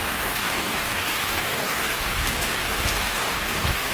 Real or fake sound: fake